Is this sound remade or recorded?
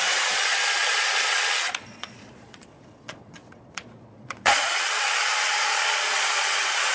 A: remade